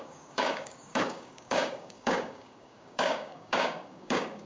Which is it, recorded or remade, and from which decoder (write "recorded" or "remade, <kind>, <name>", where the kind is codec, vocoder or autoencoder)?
remade, codec, DAC